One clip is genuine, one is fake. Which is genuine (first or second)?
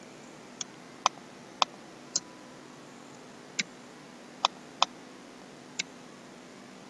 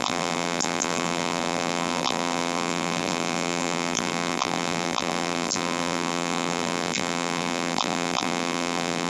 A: first